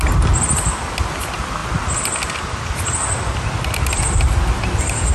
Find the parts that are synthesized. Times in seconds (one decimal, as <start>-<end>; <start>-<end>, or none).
none